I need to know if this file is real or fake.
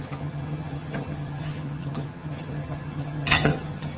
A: fake